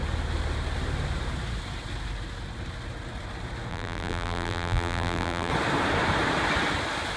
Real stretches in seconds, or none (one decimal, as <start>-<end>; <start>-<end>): 0.0-3.7; 5.5-7.2